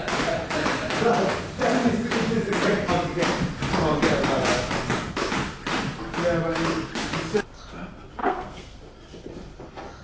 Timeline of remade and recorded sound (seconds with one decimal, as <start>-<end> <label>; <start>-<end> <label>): 0.0-8.2 recorded; 8.2-8.8 remade; 8.8-10.0 recorded